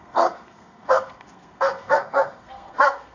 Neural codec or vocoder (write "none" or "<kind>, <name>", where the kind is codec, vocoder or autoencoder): codec, SNAC